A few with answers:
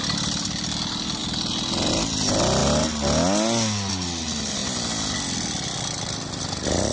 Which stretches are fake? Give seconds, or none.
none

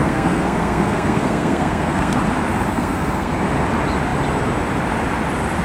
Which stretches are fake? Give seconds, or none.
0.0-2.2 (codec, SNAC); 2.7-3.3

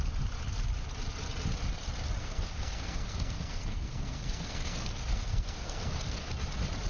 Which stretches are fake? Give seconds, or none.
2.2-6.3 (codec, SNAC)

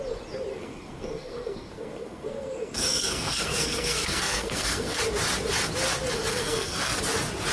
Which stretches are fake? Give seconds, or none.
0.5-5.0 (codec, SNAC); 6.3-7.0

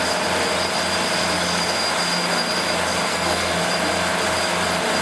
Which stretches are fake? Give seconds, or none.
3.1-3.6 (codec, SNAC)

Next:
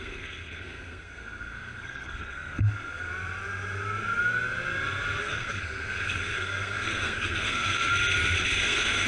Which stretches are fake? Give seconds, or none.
0.0-3.1 (codec, SNAC); 5.2-7.9; 8.6-9.1